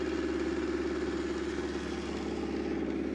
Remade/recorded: recorded